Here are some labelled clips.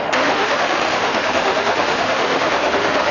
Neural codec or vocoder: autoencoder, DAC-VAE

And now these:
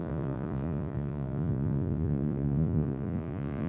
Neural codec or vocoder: vocoder, Vocos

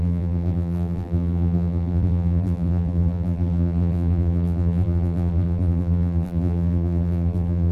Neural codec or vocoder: vocoder, BigVGAN v2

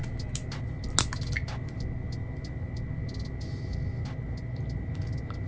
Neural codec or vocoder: none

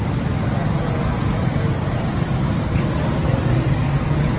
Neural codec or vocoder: none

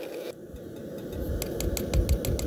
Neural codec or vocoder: none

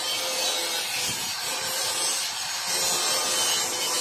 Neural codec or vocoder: none